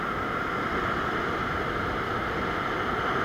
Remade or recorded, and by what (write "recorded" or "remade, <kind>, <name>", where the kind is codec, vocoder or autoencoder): recorded